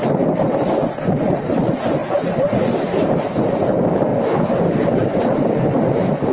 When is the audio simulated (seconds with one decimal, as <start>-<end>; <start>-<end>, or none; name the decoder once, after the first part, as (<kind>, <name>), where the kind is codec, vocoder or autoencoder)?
0.0-4.1 (vocoder, BigVGAN v2); 5.2-6.3